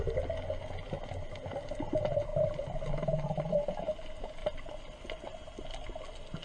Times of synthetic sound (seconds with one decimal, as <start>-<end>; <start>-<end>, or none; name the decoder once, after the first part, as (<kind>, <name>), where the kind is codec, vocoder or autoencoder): 4.4-5.0 (vocoder, BigVGAN v2)